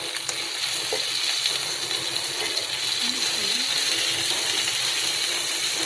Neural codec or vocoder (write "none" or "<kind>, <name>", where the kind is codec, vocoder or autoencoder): none